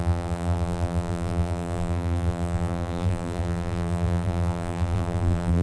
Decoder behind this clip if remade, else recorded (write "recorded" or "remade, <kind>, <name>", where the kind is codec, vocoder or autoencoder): remade, vocoder, BigVGAN v2